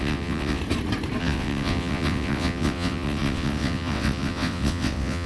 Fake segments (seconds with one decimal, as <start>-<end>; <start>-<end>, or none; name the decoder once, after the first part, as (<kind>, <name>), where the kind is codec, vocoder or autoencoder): 0.0-0.6 (vocoder, WaveNeXt); 1.2-5.3